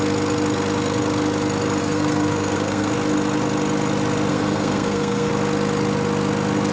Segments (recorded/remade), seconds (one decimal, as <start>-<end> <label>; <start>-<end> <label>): 0.0-1.8 recorded; 1.8-2.9 remade; 2.9-4.3 recorded; 4.3-5.3 remade; 5.3-6.7 recorded